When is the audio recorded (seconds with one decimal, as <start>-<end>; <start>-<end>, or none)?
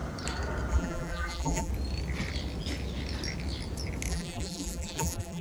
0.0-0.7; 1.7-4.1